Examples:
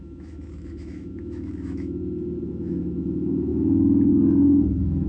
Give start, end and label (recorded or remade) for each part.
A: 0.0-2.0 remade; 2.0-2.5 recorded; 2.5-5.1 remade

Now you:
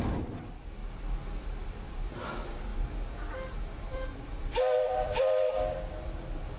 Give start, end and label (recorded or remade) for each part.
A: 0.0-0.8 remade; 0.8-1.4 recorded; 1.4-2.7 remade; 2.7-3.9 recorded; 3.9-6.6 remade